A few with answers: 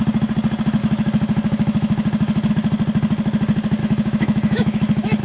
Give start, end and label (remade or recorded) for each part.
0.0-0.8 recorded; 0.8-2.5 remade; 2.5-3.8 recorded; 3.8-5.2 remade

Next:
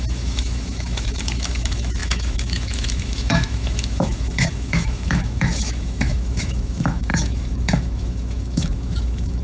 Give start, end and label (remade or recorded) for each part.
0.0-9.4 remade

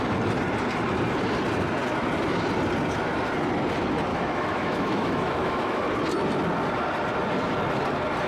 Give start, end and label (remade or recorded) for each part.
0.0-4.1 recorded; 4.1-5.8 remade; 5.8-8.3 recorded